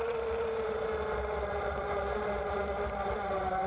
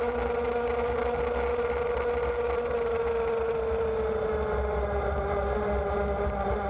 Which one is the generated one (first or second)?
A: first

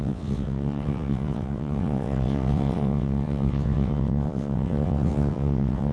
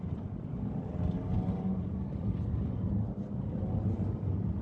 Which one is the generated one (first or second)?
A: first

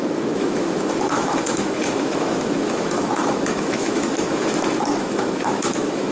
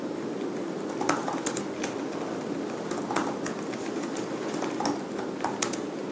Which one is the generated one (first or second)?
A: first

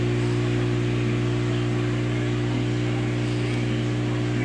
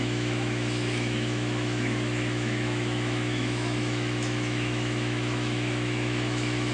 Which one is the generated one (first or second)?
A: second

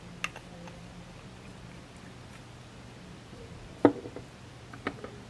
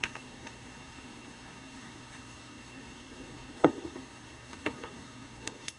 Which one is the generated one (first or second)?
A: second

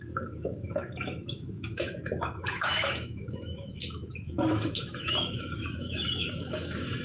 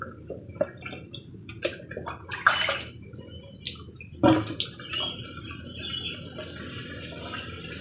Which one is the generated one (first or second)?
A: first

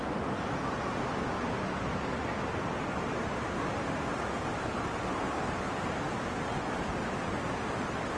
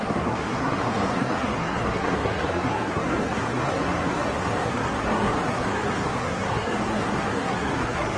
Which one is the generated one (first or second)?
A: second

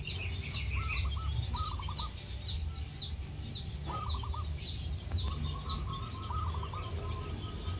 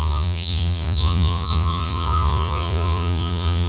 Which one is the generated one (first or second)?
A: second